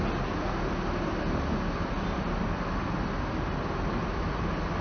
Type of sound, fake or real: real